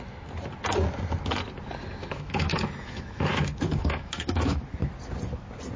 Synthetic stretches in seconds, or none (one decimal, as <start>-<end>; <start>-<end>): 2.0-4.6

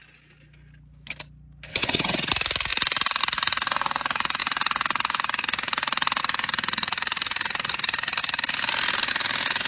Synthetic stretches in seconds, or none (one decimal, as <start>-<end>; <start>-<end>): 1.7-2.3

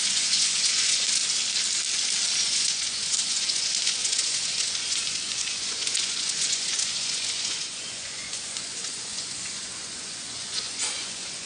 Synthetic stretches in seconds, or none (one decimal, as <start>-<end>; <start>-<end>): 0.0-1.2; 2.4-11.5

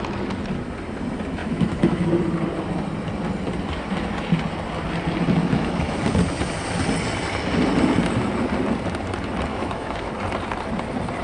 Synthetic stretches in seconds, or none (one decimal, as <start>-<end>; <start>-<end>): 1.4-2.1; 5.4-6.0; 9.5-10.1

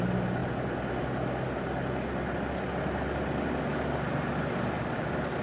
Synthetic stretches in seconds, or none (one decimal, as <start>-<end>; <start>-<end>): none